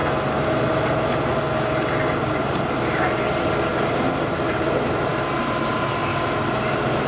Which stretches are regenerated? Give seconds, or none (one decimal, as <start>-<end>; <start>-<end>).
none